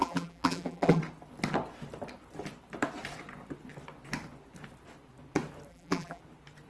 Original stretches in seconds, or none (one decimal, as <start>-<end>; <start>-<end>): 1.0-5.7; 6.2-6.7